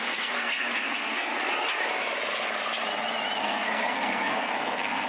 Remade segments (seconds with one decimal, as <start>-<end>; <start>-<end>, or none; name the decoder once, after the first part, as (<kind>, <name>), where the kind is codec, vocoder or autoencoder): 0.0-1.3 (codec, SNAC); 3.4-5.1